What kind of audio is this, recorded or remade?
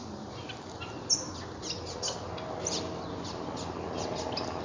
recorded